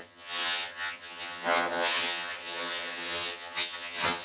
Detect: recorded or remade remade